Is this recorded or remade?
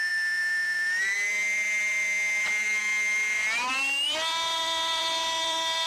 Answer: remade